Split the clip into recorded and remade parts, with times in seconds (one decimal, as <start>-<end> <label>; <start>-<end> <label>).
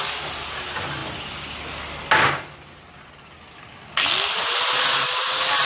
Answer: 0.0-5.7 recorded